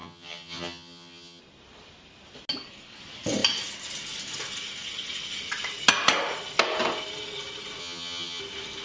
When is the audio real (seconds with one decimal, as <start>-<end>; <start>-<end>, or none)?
1.4-7.8; 8.4-8.8